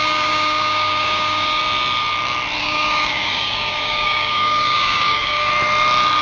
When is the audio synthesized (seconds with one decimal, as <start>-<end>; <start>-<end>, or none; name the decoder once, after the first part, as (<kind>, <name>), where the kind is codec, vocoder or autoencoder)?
0.0-1.6 (codec, DAC); 2.6-5.5

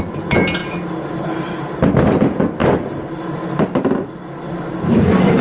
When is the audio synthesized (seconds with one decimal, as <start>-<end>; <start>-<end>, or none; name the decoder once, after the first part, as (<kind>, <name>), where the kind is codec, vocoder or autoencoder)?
none